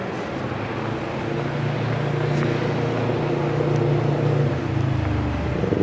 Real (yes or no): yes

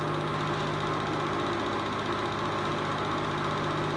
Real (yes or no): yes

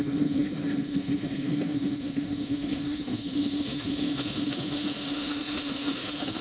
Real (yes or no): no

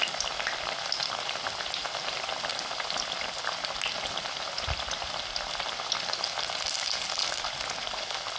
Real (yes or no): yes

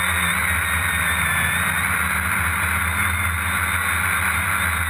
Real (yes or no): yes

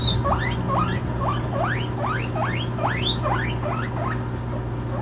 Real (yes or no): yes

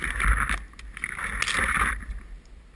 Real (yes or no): yes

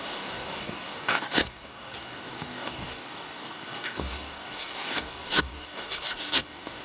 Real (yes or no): no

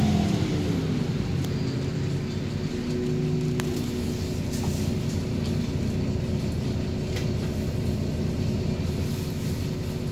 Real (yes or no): yes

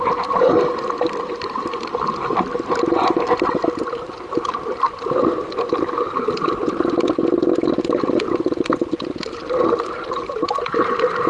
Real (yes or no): yes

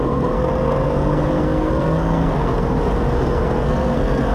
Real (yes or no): no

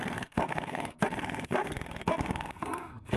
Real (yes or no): no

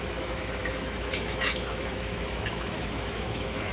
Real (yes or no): no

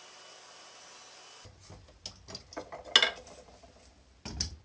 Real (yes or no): yes